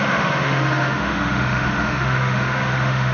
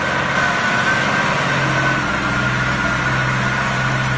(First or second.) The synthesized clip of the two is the first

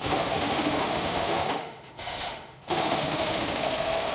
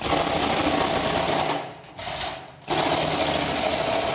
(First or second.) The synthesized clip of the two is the first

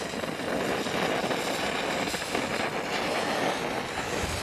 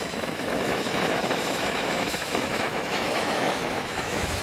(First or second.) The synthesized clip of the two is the second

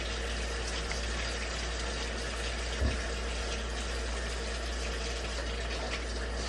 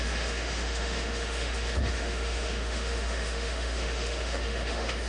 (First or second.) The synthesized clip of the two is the second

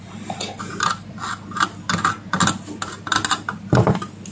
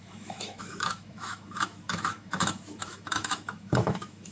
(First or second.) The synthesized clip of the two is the second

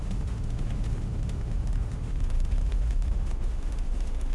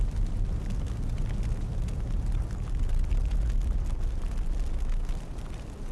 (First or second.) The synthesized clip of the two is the first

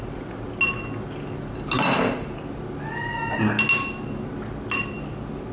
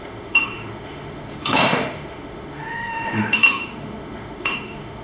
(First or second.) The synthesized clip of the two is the second